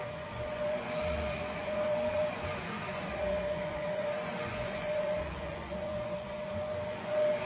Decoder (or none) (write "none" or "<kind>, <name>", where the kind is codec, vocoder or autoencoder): vocoder, Vocos